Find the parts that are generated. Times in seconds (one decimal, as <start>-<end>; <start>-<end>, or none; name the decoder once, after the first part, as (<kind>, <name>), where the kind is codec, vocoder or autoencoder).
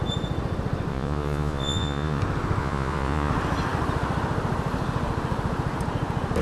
0.9-2.2 (vocoder, Vocos); 2.6-3.3